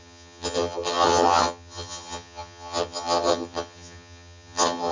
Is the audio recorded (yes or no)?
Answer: no